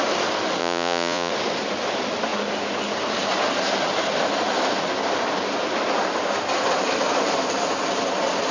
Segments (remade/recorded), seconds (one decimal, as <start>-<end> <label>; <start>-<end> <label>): 0.0-0.6 recorded; 0.6-1.3 remade; 1.3-8.5 recorded